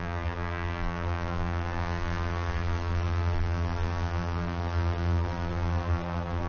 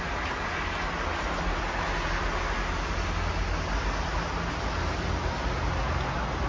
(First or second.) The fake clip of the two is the first